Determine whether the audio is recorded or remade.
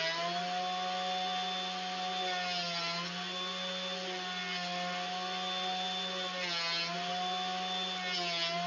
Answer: recorded